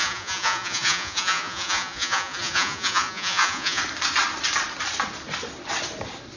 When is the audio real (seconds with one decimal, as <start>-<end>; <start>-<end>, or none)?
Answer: 3.8-6.4